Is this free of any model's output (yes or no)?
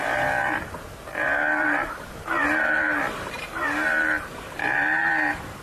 no